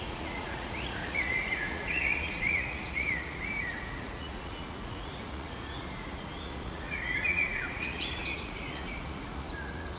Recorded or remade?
remade